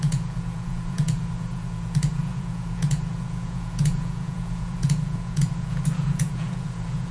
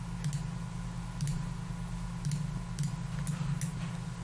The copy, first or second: first